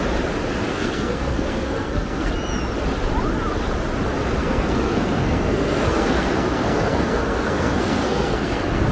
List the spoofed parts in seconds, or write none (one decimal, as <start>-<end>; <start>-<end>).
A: 0.7-2.3; 4.4-8.9